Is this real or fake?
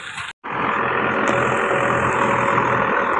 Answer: real